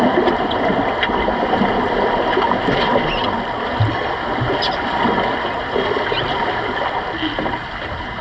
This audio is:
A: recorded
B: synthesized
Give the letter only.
A